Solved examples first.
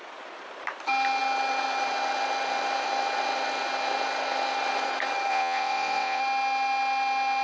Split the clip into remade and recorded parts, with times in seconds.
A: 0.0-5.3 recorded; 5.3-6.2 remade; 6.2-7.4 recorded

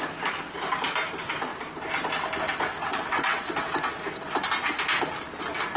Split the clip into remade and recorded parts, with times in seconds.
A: 0.0-2.8 recorded; 2.8-3.7 remade; 3.7-5.8 recorded

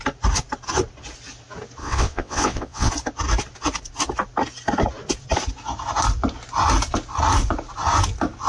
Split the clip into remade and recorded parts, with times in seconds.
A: 0.0-1.8 recorded; 1.8-2.9 remade; 2.9-8.5 recorded

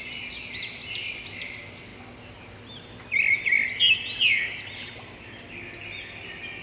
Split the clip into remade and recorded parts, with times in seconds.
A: 0.0-6.6 recorded

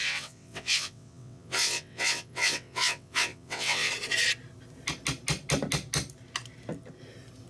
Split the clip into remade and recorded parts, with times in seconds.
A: 0.0-3.9 remade; 3.9-7.5 recorded